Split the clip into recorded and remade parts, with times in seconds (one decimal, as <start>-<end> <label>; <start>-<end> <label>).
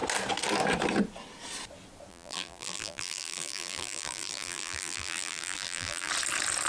0.0-2.1 recorded; 2.1-6.1 remade; 6.1-6.7 recorded